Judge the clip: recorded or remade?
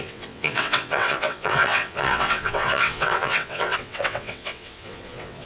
remade